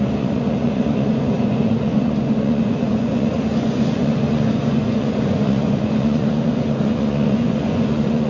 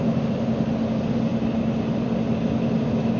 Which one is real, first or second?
second